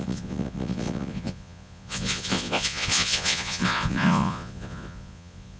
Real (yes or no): no